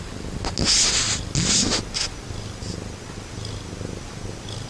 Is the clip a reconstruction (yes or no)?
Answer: no